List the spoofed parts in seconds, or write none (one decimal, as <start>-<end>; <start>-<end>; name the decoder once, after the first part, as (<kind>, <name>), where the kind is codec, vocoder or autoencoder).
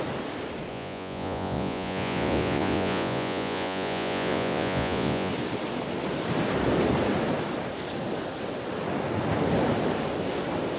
0.7-5.3 (vocoder, Vocos)